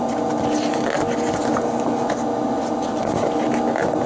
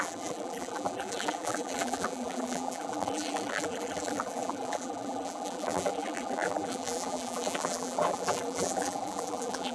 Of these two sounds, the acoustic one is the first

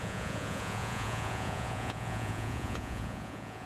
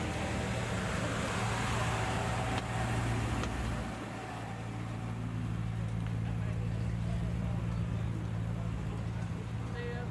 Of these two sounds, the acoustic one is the second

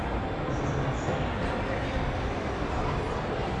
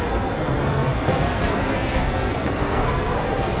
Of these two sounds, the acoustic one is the first